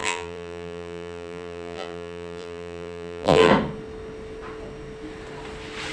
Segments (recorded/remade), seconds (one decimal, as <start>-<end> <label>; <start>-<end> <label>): 0.0-3.5 remade; 3.5-5.9 recorded